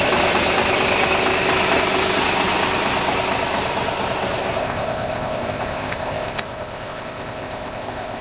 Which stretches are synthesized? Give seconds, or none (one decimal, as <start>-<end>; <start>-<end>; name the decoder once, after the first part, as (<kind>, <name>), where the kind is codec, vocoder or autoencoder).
4.6-8.2 (codec, ZipCodec)

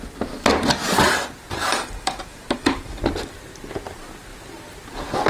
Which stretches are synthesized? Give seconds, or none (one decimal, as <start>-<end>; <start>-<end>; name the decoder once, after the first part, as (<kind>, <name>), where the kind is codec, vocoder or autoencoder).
1.7-3.0 (vocoder, BigVGAN v2)

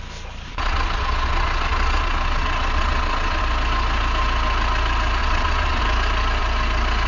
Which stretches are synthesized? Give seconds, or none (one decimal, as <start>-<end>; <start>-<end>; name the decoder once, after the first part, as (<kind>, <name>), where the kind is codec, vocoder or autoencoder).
0.5-3.4 (vocoder, Vocos); 5.2-5.8

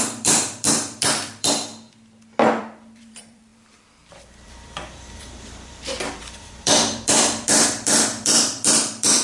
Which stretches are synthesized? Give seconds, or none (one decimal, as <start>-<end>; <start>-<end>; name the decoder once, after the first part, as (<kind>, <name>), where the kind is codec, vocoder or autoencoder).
0.0-1.7 (vocoder, BigVGAN v2); 2.6-9.2